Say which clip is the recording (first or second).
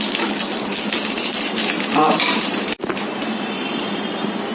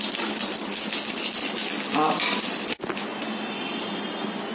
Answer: second